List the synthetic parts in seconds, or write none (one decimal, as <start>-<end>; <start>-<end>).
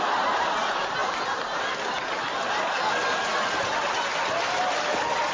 none